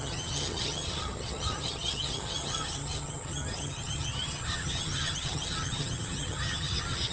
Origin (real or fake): fake